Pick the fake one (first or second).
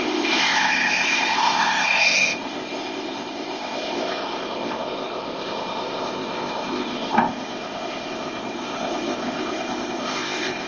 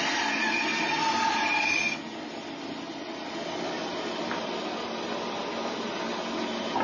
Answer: first